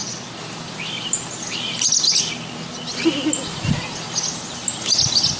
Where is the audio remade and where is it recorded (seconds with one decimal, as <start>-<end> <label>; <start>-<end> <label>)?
0.0-5.4 recorded